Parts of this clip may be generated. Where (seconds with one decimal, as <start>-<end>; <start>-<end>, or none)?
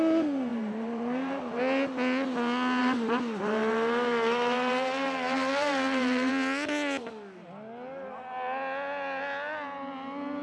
0.5-1.6; 2.8-6.3